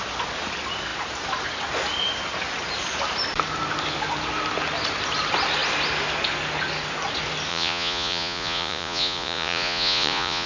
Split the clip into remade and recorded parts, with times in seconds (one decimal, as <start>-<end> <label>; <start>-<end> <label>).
0.0-7.5 recorded; 7.5-10.5 remade